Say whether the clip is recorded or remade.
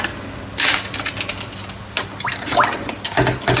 recorded